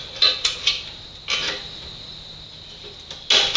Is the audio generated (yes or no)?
no